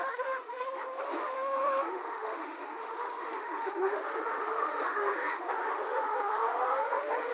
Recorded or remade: remade